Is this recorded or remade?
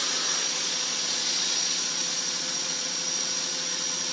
remade